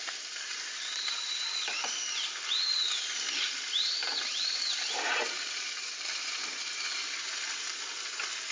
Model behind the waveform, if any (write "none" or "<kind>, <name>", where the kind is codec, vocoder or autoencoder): vocoder, BigVGAN v2